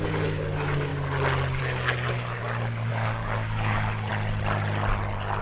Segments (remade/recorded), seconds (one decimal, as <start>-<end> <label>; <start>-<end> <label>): 0.0-0.9 remade; 0.9-1.6 recorded; 1.6-2.4 remade; 2.4-2.9 recorded; 2.9-4.1 remade; 4.1-5.4 recorded